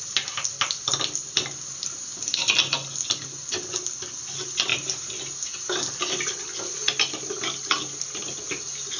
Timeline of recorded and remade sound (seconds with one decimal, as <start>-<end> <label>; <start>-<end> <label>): 0.0-9.0 recorded